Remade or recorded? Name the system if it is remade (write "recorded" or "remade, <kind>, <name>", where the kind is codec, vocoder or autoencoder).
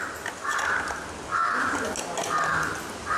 recorded